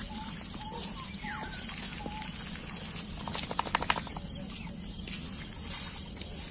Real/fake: real